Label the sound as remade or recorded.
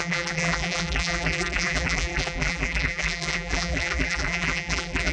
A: remade